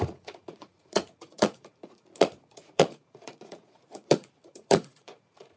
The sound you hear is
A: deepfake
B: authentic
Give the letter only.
A